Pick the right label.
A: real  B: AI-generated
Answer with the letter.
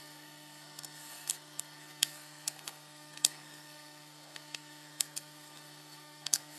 B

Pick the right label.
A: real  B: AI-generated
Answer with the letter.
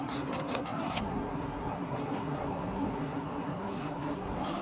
B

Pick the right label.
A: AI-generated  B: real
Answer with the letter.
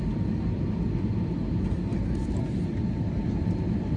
B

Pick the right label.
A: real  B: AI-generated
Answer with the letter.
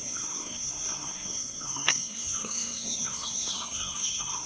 B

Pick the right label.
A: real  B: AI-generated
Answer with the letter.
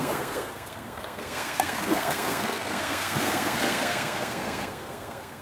B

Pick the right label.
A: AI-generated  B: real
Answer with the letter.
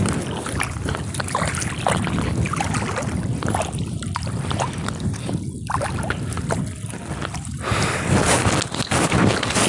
B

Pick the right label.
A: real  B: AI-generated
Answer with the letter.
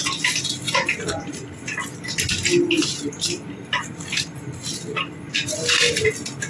A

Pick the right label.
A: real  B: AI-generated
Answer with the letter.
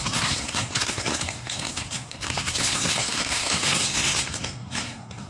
B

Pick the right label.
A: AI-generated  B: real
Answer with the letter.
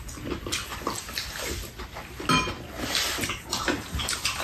B